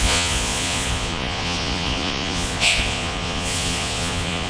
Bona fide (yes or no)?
no